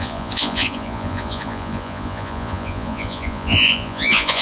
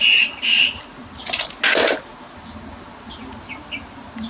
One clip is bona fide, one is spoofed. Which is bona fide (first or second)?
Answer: second